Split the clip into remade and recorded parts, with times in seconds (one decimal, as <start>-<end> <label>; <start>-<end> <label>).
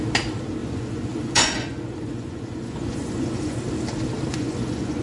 0.0-0.6 recorded; 0.6-3.6 remade; 3.6-4.3 recorded; 4.3-5.0 remade